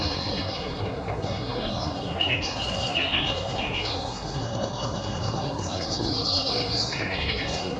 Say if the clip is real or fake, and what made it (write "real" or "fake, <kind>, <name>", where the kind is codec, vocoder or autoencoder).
fake, codec, SNAC